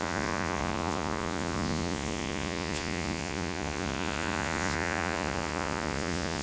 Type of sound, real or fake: fake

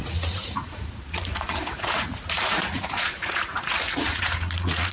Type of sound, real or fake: fake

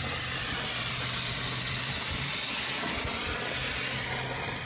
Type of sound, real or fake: fake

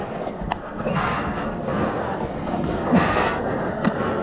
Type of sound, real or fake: fake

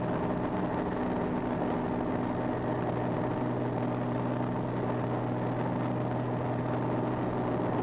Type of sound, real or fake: real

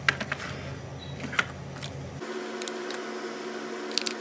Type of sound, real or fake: real